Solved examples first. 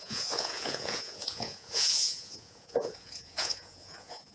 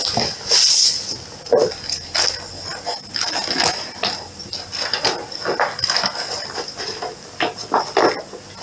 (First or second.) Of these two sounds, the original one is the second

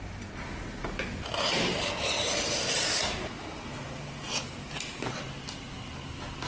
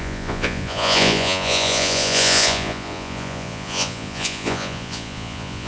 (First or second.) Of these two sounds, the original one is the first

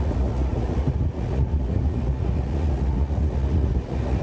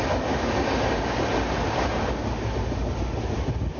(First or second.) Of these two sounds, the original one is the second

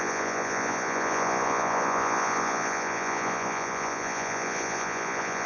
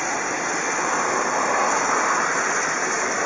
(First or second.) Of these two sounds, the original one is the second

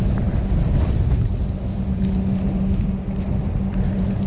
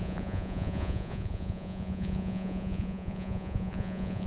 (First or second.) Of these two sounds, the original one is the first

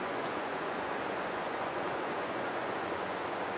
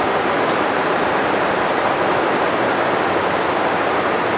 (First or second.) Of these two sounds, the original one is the second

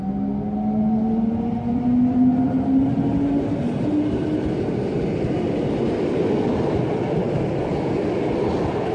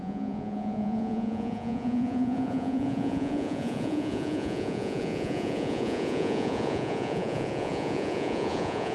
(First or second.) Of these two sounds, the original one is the first